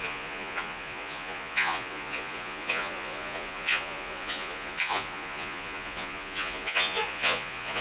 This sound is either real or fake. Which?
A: fake